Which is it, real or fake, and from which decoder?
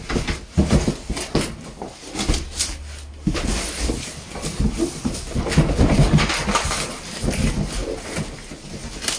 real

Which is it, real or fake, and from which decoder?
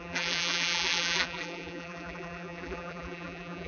fake, vocoder, BigVGAN v2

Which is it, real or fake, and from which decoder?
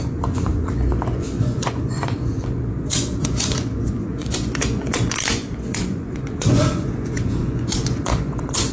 fake, vocoder, Vocos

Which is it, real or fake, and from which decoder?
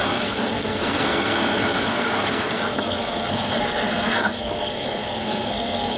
fake, codec, SNAC